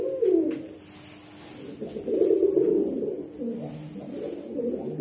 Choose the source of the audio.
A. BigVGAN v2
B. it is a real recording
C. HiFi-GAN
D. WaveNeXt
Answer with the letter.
B